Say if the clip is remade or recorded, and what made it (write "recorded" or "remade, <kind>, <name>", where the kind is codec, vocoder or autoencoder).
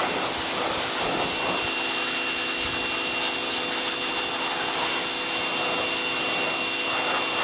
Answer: recorded